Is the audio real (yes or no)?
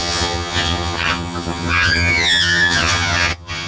no